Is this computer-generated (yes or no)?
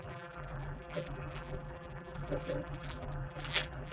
yes